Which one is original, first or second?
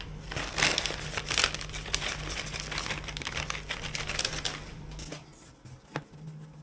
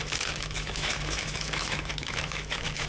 first